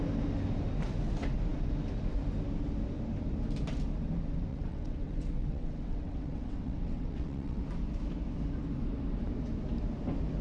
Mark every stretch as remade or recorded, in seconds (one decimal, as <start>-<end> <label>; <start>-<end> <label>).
0.0-4.5 recorded; 4.5-7.6 remade; 7.6-10.4 recorded